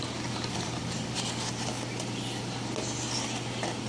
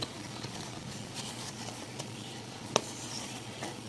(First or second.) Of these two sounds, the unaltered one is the first